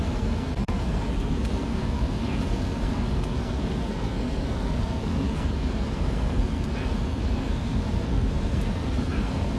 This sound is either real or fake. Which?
fake